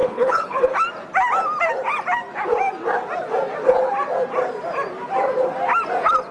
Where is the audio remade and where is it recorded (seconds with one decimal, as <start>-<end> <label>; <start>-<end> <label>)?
0.0-0.6 remade; 0.6-6.3 recorded